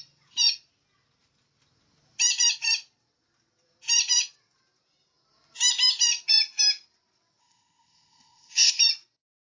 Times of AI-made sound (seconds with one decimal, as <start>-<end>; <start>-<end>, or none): 7.4-8.8